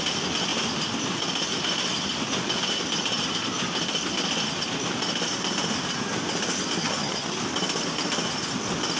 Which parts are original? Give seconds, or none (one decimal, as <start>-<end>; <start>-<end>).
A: 0.0-6.8; 7.4-9.0